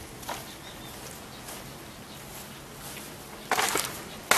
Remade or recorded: recorded